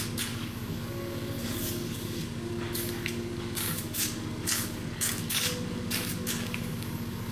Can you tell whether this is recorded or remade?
remade